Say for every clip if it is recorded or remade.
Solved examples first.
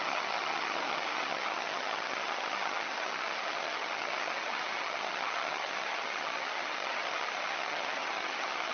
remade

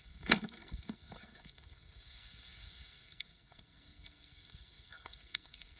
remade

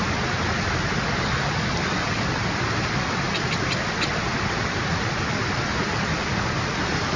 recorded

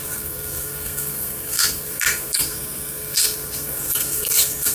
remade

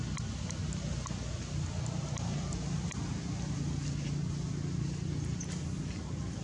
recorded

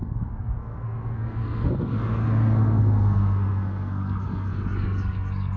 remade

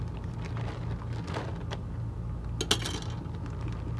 recorded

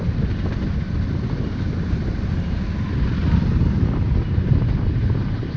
recorded